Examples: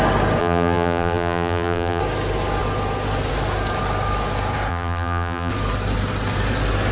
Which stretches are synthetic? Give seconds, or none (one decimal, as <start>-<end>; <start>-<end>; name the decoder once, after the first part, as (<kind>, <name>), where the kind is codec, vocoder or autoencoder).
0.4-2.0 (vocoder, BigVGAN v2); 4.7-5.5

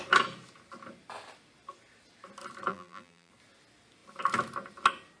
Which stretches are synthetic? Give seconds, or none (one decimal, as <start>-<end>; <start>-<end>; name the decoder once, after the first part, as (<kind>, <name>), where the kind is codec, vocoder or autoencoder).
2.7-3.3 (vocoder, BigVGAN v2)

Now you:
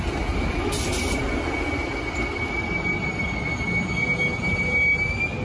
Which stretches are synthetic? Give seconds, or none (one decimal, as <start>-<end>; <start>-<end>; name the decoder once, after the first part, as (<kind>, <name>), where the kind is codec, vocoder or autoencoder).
none

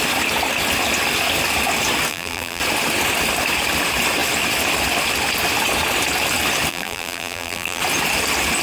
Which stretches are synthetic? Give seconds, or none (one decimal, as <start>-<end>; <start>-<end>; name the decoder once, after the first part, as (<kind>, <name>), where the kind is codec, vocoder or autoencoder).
2.1-2.6 (vocoder, BigVGAN v2); 6.7-7.8